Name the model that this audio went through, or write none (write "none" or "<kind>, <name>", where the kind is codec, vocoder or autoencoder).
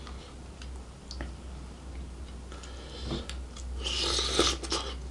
none